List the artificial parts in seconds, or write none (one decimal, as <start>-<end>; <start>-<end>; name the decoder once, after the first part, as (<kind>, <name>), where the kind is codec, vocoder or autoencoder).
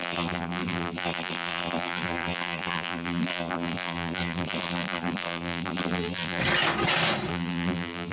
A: 0.0-6.4 (vocoder, BigVGAN v2); 7.3-8.1